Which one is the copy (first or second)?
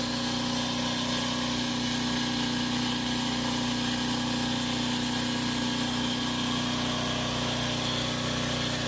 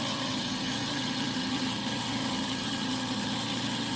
second